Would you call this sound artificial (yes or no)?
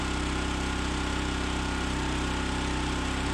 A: yes